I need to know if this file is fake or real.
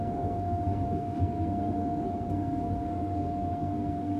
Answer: fake